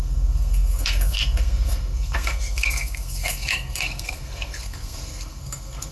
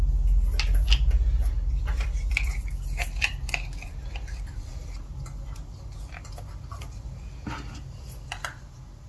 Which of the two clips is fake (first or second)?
first